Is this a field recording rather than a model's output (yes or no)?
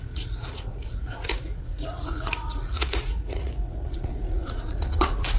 no